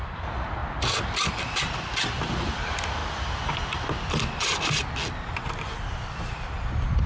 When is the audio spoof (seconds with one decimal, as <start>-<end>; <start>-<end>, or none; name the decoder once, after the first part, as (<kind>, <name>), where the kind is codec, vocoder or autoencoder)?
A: 0.0-0.6 (vocoder, BigVGAN v2); 1.3-3.0; 5.3-7.1